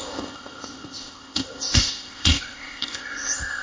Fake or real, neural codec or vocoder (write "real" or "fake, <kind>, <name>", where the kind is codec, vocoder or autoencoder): fake, codec, ZipCodec